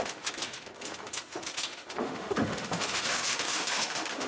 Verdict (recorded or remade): remade